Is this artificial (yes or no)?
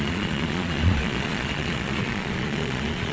yes